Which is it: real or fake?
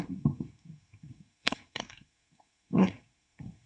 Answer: fake